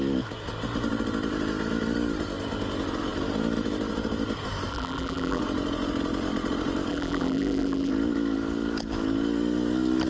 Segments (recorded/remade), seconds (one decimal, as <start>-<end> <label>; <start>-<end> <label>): 0.0-4.7 recorded; 4.7-5.4 remade; 5.4-6.9 recorded; 6.9-7.9 remade; 7.9-10.1 recorded